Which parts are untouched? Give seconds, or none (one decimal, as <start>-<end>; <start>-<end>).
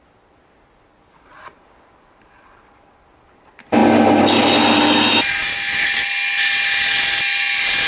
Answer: 0.0-7.9